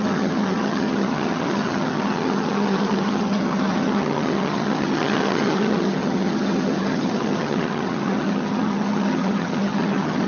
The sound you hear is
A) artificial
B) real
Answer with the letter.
A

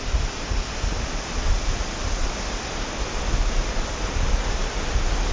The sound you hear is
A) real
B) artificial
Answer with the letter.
A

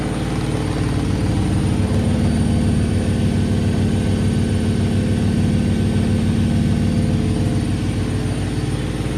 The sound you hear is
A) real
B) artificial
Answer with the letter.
A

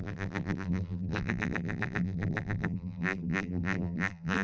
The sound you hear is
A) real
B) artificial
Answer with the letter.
B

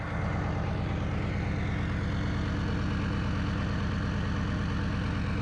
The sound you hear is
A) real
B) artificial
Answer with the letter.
A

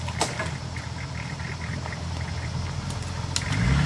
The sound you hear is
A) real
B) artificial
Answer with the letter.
A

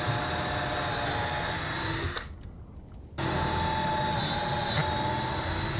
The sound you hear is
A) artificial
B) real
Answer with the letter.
B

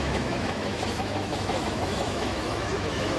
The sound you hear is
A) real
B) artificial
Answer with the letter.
B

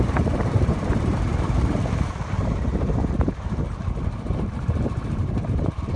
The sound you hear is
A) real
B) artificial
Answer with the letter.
B